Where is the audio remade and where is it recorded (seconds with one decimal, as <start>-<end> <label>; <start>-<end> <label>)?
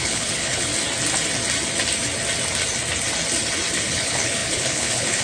0.0-0.7 remade; 0.7-3.8 recorded; 3.8-5.2 remade